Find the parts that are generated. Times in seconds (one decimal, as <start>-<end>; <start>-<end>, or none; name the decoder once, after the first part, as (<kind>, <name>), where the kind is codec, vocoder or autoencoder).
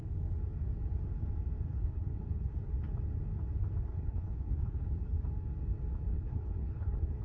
1.7-2.7 (codec, HILCodec); 3.9-5.2; 6.1-7.2